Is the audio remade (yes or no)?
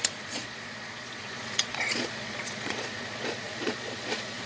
yes